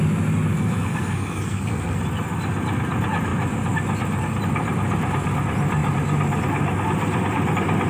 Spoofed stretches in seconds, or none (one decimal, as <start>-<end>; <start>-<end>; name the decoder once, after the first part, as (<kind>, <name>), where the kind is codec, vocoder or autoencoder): 0.5-2.0 (codec, SNAC)